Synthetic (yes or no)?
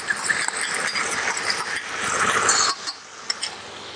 no